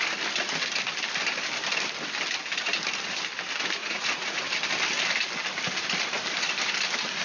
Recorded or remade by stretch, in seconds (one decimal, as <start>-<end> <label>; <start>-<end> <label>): 0.0-3.8 recorded; 3.8-4.4 remade; 4.4-7.2 recorded